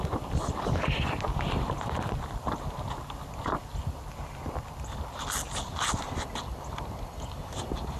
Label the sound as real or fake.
real